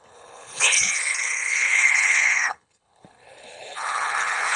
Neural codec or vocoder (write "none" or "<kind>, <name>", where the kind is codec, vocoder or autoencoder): codec, HILCodec